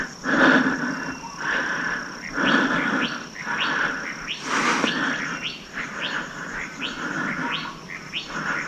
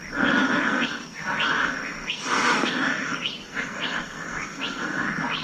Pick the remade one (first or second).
second